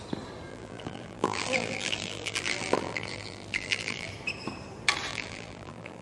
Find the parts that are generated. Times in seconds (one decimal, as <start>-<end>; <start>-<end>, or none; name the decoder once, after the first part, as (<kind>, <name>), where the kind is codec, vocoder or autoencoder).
0.5-4.1 (vocoder, BigVGAN v2); 5.1-6.0